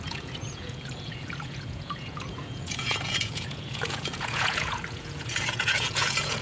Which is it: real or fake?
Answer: fake